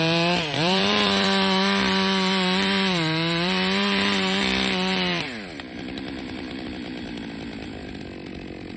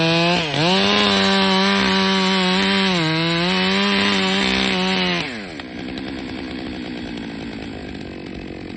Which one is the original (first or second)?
second